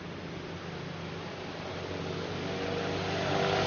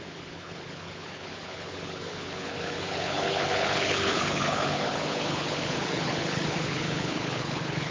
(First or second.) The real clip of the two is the first